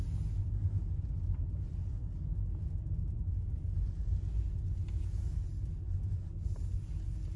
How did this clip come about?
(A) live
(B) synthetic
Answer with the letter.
A